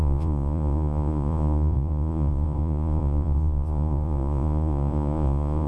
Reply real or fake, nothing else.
fake